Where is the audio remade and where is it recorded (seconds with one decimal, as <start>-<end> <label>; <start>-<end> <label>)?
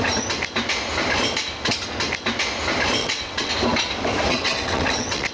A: 0.0-3.0 recorded; 3.0-3.5 remade; 3.5-4.3 recorded; 4.3-5.3 remade